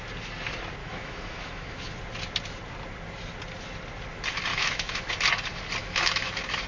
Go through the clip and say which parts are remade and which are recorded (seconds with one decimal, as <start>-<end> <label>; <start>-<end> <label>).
0.0-0.8 recorded; 0.8-1.9 remade; 1.9-4.5 recorded; 4.5-5.1 remade; 5.1-5.8 recorded; 5.8-6.3 remade; 6.3-6.7 recorded